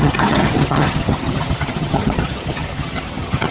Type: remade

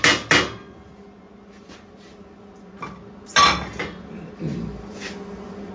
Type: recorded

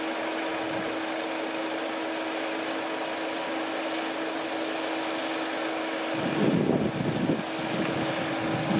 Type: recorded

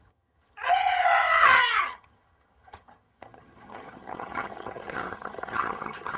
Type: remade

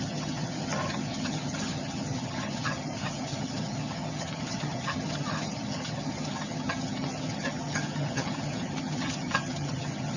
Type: remade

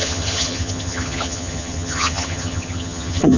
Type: remade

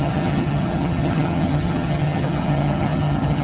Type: remade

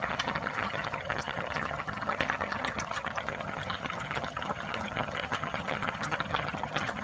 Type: remade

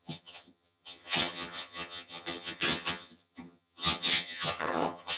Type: remade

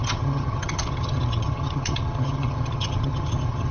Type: remade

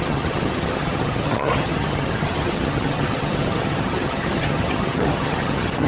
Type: remade